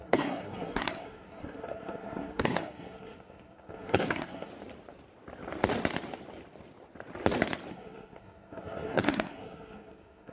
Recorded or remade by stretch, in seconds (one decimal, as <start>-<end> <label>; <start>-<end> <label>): 0.0-4.5 remade; 4.5-7.7 recorded; 7.7-10.3 remade